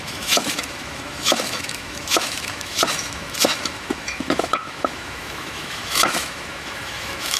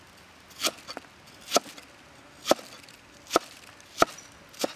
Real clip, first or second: second